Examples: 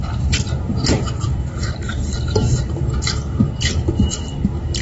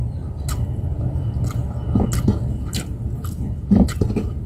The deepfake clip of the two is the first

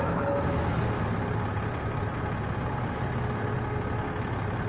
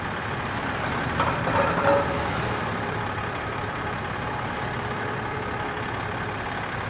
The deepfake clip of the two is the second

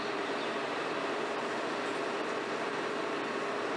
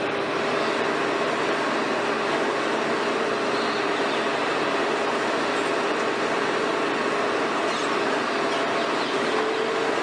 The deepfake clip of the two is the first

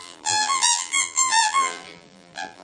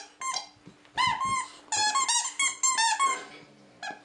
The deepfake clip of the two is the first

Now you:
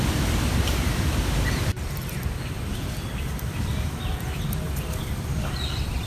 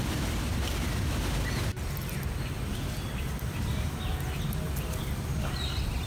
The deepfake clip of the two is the first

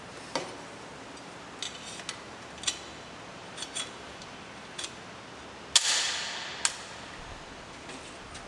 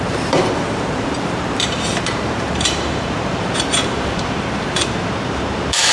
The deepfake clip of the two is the second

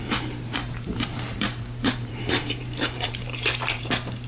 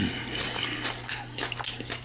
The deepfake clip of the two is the first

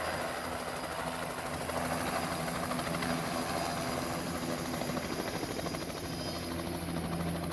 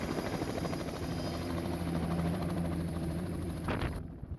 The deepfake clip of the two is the second